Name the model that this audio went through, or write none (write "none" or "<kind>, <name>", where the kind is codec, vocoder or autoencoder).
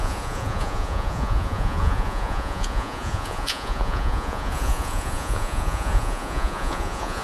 vocoder, Vocos